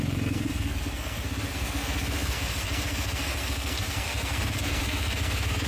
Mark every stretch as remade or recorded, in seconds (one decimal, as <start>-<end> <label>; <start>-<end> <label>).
0.0-5.7 remade